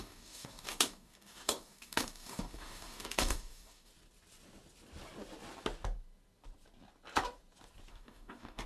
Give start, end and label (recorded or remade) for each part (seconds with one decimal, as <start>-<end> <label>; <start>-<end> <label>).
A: 0.0-3.9 remade; 3.9-7.9 recorded; 7.9-8.7 remade